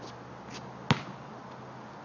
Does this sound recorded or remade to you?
recorded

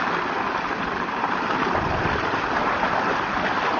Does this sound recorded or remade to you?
recorded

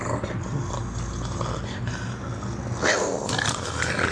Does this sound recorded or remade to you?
recorded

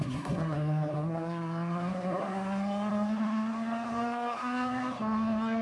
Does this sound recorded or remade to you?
remade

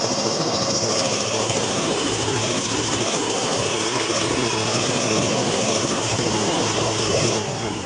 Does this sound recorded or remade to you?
remade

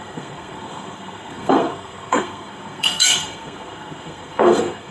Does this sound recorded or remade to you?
remade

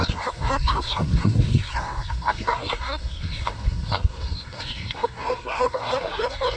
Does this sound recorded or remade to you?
remade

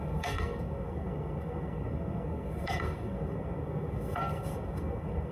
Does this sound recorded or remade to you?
remade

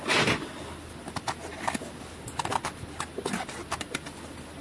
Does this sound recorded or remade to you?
recorded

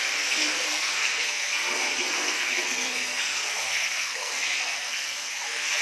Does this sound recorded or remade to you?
remade